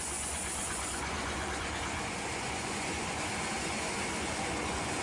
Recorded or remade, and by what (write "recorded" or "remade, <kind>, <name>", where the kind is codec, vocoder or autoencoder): remade, vocoder, Vocos